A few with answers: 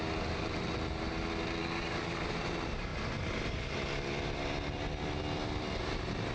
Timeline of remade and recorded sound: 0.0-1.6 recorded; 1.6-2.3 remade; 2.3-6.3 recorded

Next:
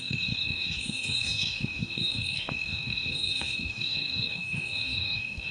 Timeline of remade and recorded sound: 0.0-5.5 remade